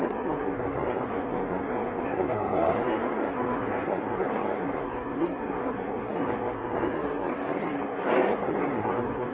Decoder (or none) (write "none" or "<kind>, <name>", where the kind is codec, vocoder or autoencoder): codec, SNAC